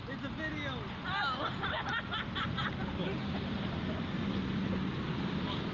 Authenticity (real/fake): real